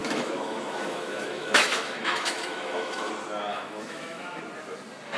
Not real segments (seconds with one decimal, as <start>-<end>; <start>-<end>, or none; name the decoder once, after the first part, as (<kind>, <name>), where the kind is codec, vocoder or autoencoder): 0.0-3.1 (autoencoder, DAC-VAE); 3.5-4.4